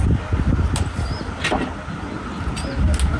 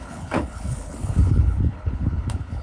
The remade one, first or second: second